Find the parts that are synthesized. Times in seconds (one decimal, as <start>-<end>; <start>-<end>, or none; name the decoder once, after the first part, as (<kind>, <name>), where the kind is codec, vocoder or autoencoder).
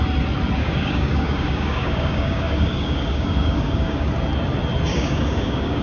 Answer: 0.6-4.1 (codec, DAC); 4.9-5.8